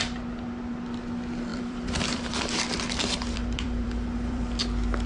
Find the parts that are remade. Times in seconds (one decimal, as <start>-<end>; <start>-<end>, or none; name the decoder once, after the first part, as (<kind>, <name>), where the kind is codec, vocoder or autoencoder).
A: 1.5-4.6 (vocoder, BigVGAN v2)

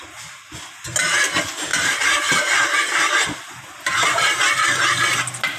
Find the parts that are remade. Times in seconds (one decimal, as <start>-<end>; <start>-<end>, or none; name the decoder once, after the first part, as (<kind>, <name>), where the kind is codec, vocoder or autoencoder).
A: 1.7-4.4 (vocoder, BigVGAN v2)

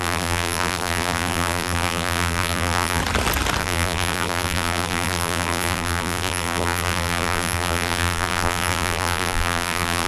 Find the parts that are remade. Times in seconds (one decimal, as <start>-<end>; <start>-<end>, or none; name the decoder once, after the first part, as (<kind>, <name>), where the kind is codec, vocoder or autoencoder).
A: 0.0-3.0 (vocoder, BigVGAN v2); 3.6-10.1

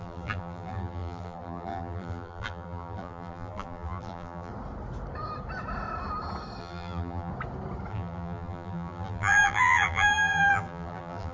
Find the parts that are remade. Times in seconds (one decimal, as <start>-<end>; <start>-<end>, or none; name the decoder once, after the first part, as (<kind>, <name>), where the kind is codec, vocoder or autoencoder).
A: 0.0-4.5 (vocoder, BigVGAN v2); 6.6-7.3; 7.9-11.3